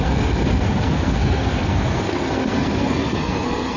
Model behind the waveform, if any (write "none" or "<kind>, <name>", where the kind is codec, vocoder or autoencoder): codec, SNAC